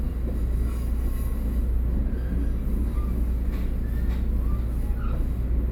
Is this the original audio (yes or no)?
yes